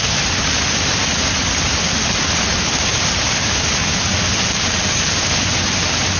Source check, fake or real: real